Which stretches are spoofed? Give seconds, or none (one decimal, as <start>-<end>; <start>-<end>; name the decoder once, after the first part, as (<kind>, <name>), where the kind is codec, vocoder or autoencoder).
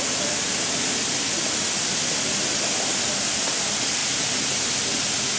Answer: none